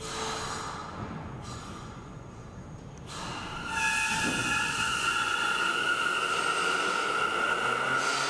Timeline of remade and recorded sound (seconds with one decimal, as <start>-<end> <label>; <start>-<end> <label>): 0.0-0.8 recorded; 0.8-2.4 remade; 2.4-4.4 recorded; 4.4-6.0 remade; 6.0-8.3 recorded